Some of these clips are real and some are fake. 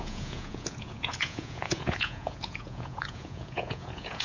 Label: fake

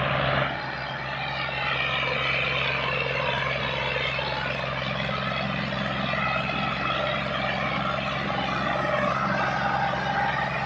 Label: real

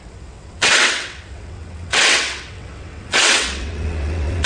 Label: fake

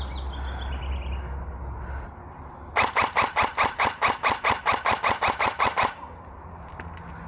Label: real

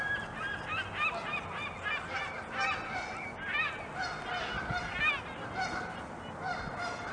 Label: real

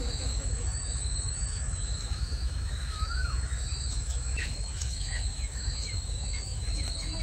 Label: fake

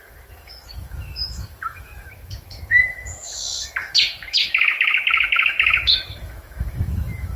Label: fake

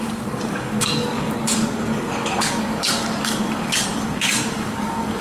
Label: fake